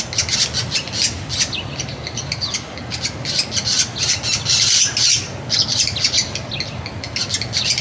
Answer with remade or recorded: recorded